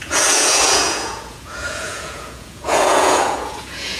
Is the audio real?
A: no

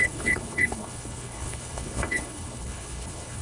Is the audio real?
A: no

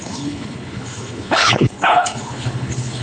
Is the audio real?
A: no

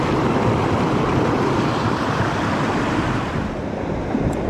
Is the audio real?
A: no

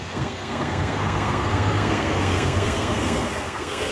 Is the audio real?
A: no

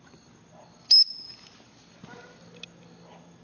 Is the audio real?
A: yes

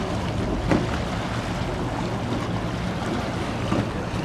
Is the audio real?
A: yes